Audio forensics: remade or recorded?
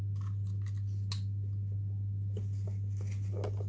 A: recorded